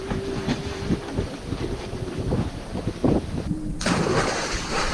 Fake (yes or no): yes